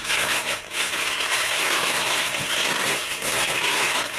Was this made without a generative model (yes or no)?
no